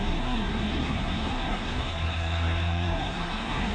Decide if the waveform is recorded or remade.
remade